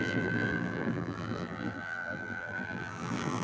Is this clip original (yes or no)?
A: no